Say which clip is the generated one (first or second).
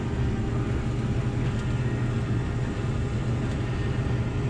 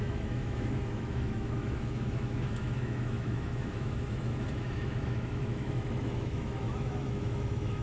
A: second